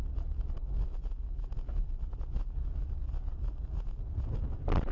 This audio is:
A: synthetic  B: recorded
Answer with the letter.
B